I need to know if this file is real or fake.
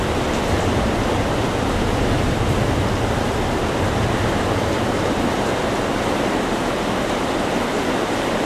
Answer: fake